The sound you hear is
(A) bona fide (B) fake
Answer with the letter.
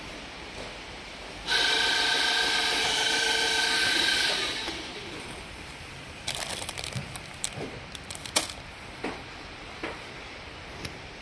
B